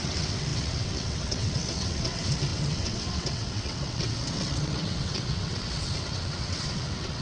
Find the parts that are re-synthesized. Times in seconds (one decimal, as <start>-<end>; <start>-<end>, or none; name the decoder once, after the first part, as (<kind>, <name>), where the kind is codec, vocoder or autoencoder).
0.0-7.2 (vocoder, WaveNeXt)